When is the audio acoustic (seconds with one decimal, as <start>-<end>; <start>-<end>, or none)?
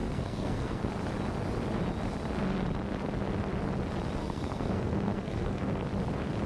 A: 0.9-4.2; 5.9-6.5